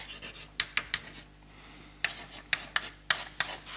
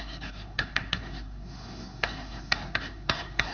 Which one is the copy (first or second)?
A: second